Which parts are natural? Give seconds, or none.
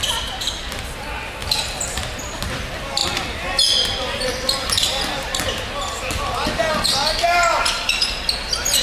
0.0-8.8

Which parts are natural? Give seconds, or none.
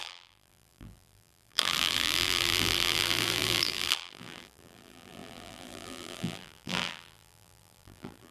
none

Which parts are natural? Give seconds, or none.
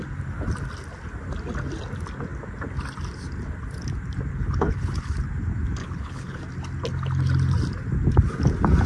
0.0-4.3; 5.1-5.8; 6.4-8.9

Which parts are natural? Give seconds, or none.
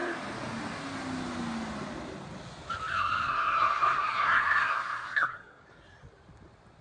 0.0-2.9; 5.6-6.8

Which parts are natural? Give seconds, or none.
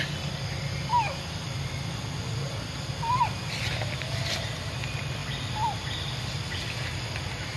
0.0-7.6